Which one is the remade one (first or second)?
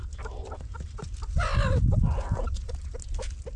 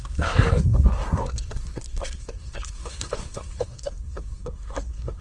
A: second